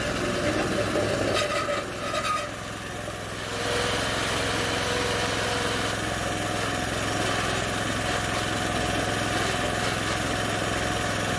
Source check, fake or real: real